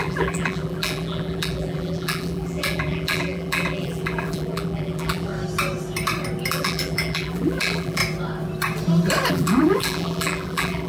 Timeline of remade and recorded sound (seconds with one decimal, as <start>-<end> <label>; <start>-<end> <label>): 0.0-5.3 remade; 5.3-6.5 recorded; 6.5-8.0 remade; 8.0-9.3 recorded; 9.3-10.9 remade